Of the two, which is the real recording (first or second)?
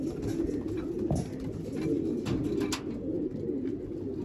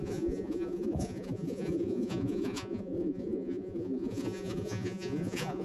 first